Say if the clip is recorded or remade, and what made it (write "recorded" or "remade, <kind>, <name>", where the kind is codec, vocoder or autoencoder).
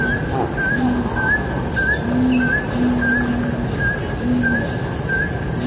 recorded